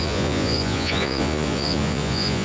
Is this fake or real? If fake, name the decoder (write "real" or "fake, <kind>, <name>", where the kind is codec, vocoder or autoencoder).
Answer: fake, vocoder, Vocos